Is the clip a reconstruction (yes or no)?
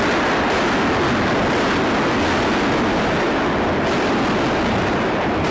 no